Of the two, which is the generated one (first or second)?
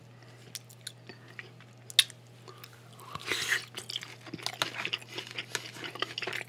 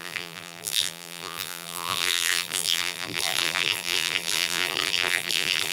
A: second